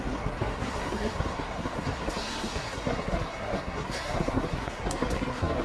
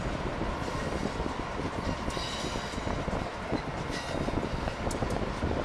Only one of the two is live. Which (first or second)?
second